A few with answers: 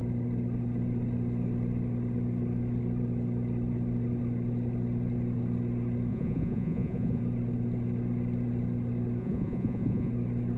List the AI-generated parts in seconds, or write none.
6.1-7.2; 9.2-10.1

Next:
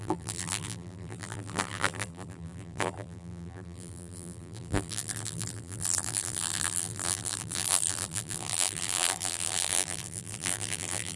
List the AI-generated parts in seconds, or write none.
0.0-11.2